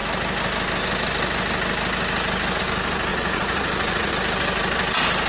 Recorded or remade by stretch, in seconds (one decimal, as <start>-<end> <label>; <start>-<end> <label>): 0.0-3.1 recorded; 3.1-4.1 remade; 4.1-5.3 recorded